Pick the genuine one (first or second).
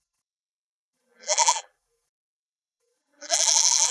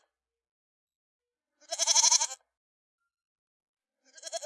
second